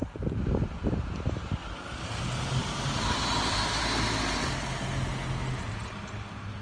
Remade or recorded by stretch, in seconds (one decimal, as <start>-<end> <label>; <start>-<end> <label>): 0.0-6.6 recorded

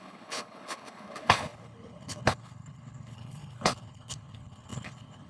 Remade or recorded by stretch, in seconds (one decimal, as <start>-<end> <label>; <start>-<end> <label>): 0.0-5.3 remade

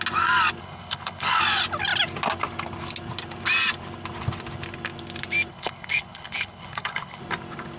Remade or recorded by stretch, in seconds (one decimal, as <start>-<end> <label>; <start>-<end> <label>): 0.0-0.6 recorded; 0.6-1.4 remade; 1.4-5.5 recorded; 5.5-7.2 remade; 7.2-7.8 recorded

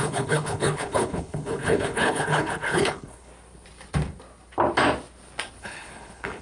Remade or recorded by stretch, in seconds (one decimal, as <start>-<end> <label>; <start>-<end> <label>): 0.0-3.3 remade; 3.3-5.6 recorded; 5.6-6.4 remade

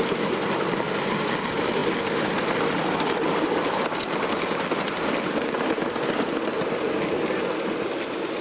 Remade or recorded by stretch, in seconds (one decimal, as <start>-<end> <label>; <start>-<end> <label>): 0.0-8.4 recorded

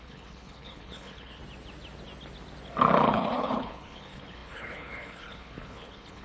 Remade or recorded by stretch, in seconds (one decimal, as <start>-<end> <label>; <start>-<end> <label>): 0.0-1.4 remade; 1.4-3.1 recorded; 3.1-6.2 remade